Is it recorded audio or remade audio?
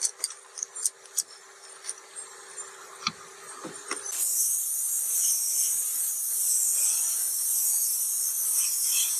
recorded